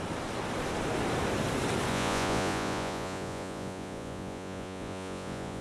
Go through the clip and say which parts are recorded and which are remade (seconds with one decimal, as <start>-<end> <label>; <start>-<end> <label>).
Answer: 0.0-1.9 recorded; 1.9-5.6 remade